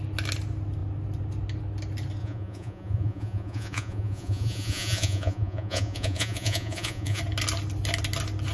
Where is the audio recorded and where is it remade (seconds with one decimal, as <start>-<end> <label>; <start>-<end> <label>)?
0.0-2.2 recorded; 2.2-7.2 remade; 7.2-8.5 recorded